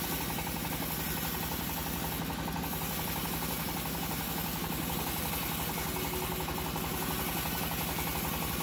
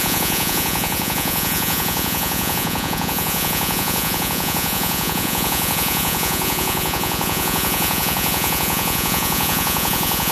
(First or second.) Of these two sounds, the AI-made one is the second